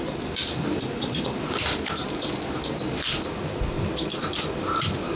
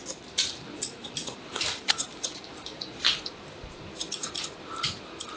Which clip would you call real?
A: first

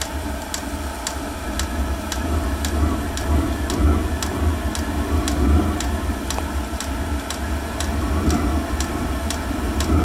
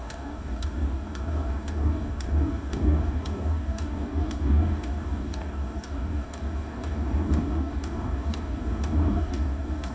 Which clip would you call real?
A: first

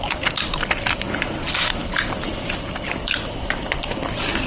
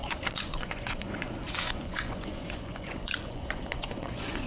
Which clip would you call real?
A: first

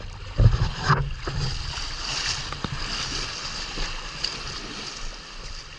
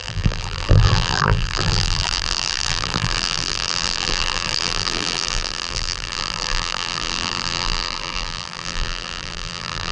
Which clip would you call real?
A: first